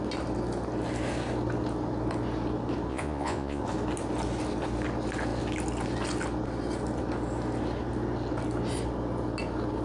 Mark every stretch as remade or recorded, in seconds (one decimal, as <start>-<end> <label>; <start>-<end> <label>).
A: 0.0-2.9 recorded; 2.9-3.6 remade; 3.6-9.8 recorded